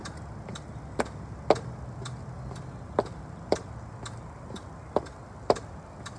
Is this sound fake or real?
real